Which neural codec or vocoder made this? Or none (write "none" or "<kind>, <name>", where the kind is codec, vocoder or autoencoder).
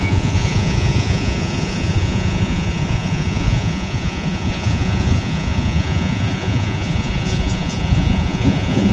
vocoder, Vocos